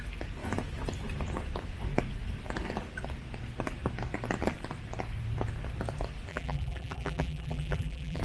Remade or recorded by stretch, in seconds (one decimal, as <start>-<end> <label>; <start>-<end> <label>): 0.0-6.3 recorded; 6.3-8.2 remade